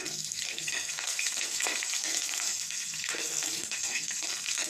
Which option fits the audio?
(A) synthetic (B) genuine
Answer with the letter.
A